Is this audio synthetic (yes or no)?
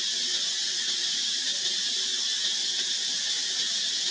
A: no